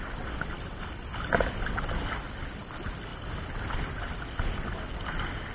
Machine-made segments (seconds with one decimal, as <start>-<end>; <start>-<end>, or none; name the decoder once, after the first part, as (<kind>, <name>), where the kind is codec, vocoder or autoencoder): none